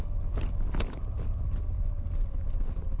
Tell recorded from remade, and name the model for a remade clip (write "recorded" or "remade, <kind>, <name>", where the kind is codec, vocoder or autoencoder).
recorded